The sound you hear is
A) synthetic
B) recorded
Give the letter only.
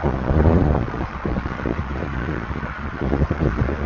A